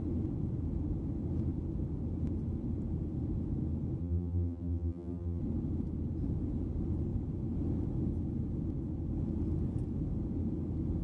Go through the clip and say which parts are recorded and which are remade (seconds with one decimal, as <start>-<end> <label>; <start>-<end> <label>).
0.0-4.0 recorded; 4.0-5.4 remade; 5.4-11.0 recorded